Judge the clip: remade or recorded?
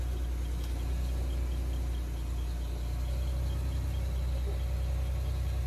recorded